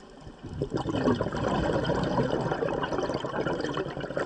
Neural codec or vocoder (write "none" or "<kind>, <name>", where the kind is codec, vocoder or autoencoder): vocoder, BigVGAN v2